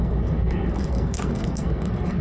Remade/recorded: remade